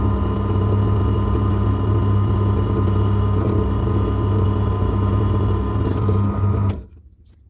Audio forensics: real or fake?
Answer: real